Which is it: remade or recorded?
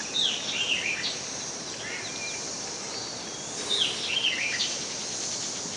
recorded